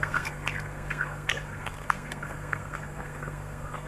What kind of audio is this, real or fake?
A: fake